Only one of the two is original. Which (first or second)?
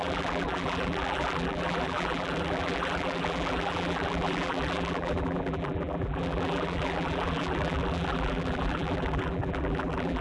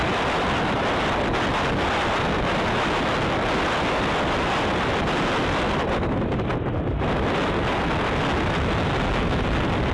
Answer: second